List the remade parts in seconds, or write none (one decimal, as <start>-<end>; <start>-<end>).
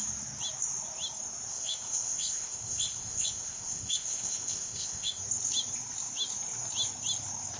1.5-5.2